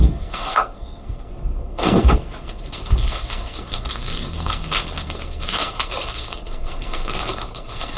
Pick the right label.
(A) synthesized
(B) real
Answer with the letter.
A